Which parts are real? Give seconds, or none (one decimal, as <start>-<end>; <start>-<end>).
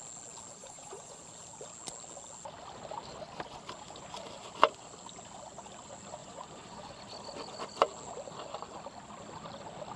0.0-0.6; 1.2-6.2; 7.0-10.0